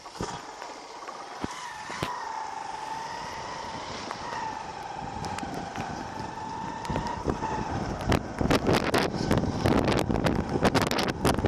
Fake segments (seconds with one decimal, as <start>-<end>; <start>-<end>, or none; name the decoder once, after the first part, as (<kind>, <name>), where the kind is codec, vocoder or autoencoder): 4.7-5.5 (vocoder, BigVGAN v2); 6.9-8.1